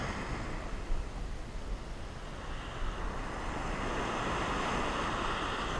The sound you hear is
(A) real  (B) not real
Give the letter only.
A